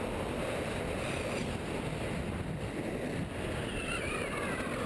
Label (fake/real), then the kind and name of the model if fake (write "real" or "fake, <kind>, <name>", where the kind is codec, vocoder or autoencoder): real